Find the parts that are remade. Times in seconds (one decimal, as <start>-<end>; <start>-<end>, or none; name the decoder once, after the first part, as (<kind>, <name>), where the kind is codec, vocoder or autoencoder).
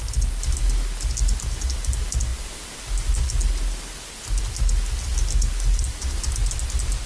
none